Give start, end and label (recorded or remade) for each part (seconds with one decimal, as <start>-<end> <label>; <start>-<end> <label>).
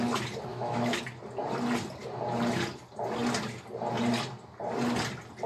0.0-0.5 recorded; 0.5-1.0 remade; 1.0-5.5 recorded